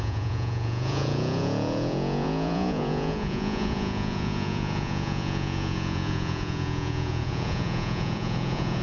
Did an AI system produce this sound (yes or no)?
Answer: yes